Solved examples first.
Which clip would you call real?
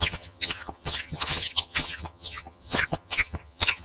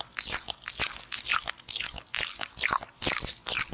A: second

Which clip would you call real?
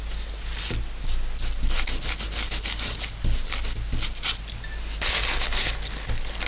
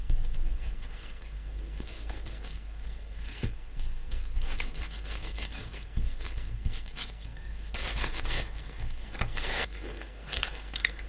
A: first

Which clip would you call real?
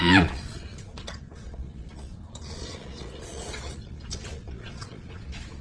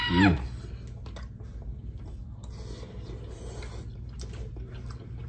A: second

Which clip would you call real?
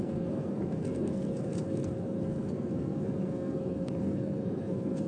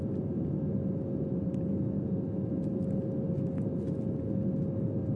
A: second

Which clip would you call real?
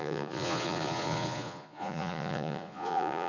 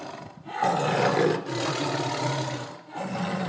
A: second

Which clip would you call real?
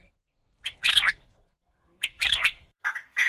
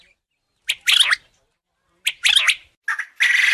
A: second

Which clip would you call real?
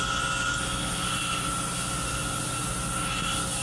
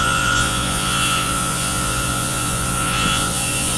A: first